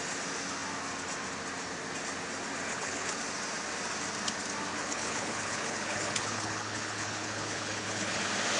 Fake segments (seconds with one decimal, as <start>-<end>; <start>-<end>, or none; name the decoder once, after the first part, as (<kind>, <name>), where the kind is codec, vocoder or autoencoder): 2.7-3.2 (codec, HILCodec); 4.7-8.2